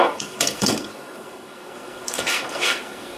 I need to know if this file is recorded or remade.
remade